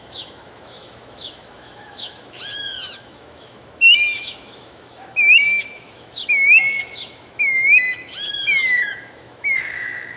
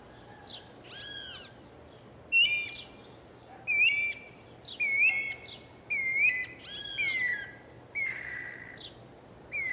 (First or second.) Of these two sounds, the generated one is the first